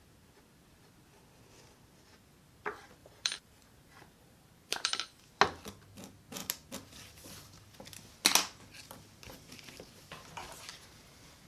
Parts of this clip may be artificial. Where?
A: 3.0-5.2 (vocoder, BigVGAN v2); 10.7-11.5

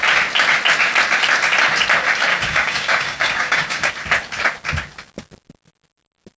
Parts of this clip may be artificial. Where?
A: 2.3-3.9 (codec, DAC)

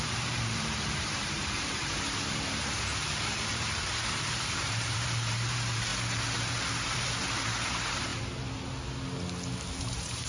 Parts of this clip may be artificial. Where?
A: 0.0-2.9 (vocoder, BigVGAN v2); 3.5-5.9; 6.7-8.1; 9.8-10.3

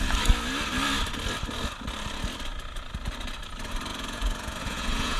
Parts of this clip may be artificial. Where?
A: 3.9-5.2 (vocoder, Vocos)

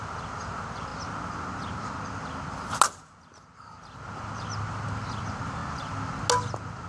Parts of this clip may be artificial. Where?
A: none

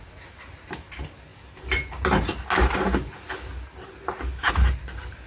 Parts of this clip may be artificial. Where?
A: none

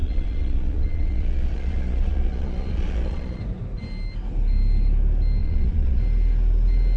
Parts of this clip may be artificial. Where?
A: 0.0-3.4 (vocoder, Vocos); 5.4-6.0

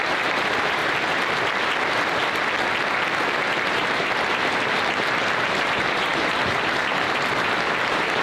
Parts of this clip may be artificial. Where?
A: 0.0-0.8 (vocoder, BigVGAN v2); 3.5-8.2